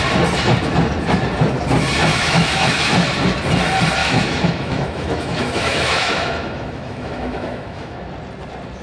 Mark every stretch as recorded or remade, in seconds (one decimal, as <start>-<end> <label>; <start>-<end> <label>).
0.0-2.1 recorded; 2.1-2.9 remade; 2.9-4.0 recorded; 4.0-8.1 remade; 8.1-8.8 recorded